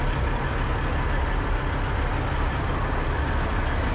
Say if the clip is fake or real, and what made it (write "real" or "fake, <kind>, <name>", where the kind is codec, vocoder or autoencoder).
real